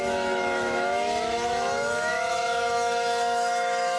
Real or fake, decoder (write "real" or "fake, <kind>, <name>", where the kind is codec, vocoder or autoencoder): fake, autoencoder, DAC-VAE